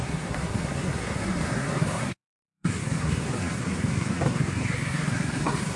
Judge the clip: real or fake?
fake